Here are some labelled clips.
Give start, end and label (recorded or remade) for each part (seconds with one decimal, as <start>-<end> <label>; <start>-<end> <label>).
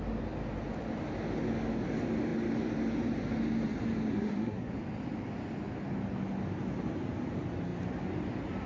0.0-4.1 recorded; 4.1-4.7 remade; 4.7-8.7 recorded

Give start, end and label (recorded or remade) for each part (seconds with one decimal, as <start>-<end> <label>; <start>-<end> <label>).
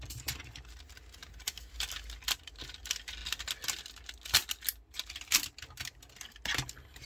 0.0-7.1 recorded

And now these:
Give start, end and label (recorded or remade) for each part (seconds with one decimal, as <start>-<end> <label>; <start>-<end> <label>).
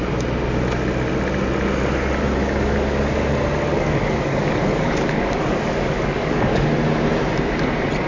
0.0-2.4 recorded; 2.4-3.3 remade; 3.3-3.7 recorded; 3.7-6.7 remade; 6.7-8.1 recorded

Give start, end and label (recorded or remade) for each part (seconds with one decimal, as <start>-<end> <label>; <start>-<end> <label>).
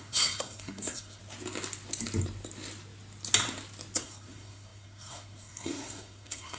0.0-1.2 remade; 1.2-4.0 recorded; 4.0-6.6 remade